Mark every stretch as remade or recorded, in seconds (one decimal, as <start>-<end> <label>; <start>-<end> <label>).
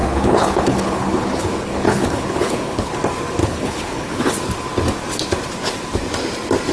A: 0.0-2.9 remade; 2.9-3.4 recorded; 3.4-4.3 remade; 4.3-6.7 recorded